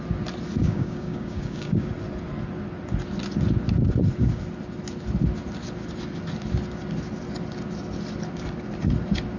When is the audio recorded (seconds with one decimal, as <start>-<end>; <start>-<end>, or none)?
0.0-0.6; 1.9-9.4